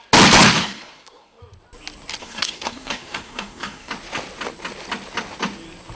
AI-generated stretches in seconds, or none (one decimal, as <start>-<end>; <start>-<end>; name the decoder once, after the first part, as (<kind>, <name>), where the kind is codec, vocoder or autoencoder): 0.6-1.4 (codec, SNAC); 2.2-3.9